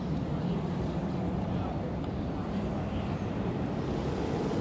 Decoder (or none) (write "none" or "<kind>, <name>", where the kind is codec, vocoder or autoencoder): vocoder, BigVGAN v2